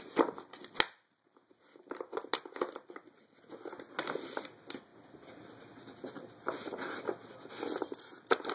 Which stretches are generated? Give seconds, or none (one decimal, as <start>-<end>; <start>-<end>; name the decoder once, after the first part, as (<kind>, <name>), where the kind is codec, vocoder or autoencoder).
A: none